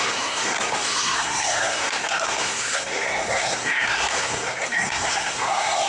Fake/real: fake